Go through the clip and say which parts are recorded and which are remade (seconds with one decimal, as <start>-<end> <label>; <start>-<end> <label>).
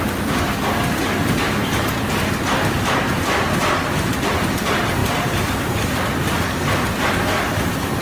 0.0-5.0 recorded; 5.0-7.1 remade; 7.1-8.0 recorded